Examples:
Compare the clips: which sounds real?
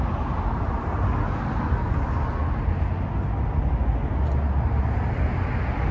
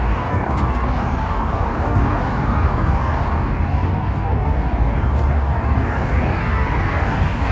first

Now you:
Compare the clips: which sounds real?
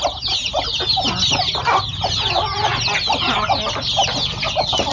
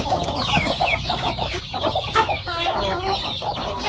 first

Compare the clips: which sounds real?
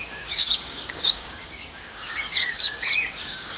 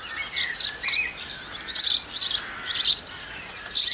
second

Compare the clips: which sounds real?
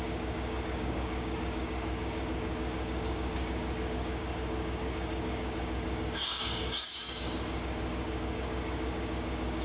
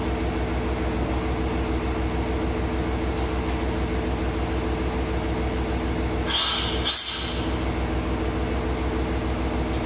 second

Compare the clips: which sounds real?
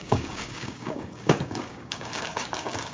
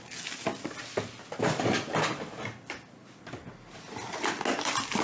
second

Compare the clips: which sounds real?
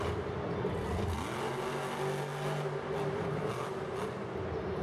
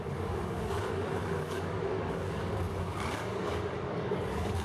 first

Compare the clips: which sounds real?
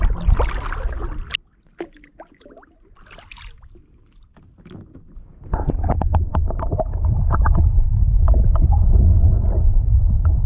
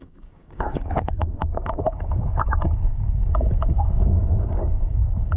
first